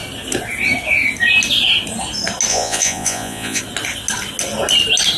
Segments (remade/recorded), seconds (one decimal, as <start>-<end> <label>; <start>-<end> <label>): 0.0-2.5 recorded; 2.5-3.6 remade; 3.6-5.2 recorded